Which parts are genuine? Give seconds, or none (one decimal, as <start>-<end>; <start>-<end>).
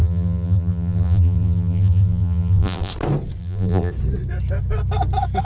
2.9-3.4; 3.9-5.4